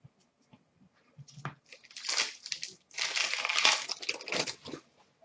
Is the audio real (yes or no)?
yes